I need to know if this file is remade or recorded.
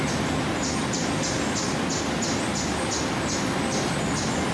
recorded